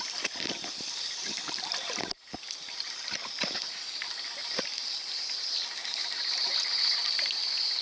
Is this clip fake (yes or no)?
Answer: no